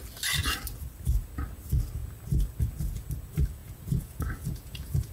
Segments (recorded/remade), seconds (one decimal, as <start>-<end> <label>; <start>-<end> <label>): 0.0-3.6 recorded; 3.6-5.1 remade